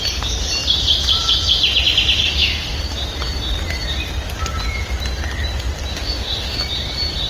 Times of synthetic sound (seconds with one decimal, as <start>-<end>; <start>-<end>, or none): 2.2-2.8; 5.9-6.6